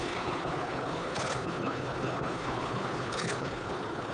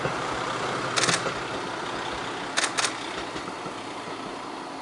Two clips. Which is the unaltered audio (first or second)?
second